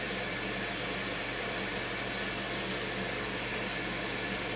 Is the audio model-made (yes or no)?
no